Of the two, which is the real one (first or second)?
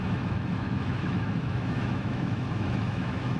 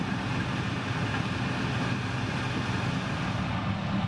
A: second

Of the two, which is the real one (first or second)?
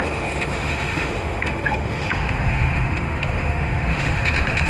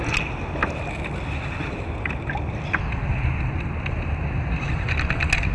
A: second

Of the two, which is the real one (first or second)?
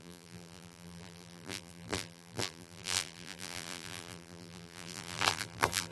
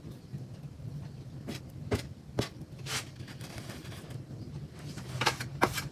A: second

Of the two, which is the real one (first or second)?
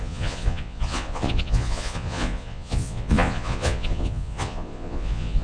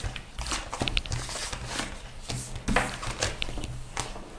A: second